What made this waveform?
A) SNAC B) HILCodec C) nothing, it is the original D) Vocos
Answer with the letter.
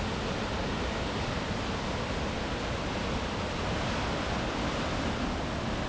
C